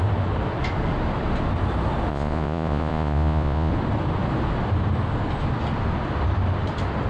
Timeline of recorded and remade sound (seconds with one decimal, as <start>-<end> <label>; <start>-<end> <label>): 0.0-2.1 recorded; 2.1-3.7 remade; 3.7-7.1 recorded